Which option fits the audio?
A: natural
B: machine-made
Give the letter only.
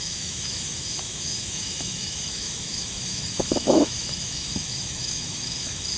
B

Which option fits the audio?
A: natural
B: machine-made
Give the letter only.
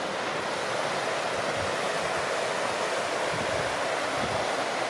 A